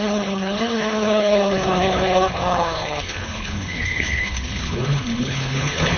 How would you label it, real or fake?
fake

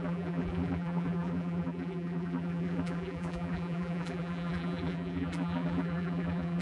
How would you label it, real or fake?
fake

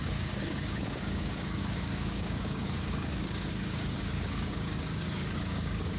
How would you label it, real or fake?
fake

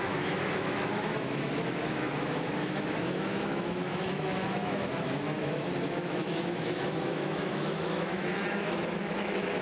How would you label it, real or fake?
fake